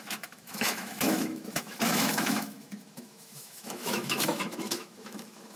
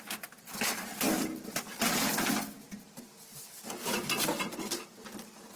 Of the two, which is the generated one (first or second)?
first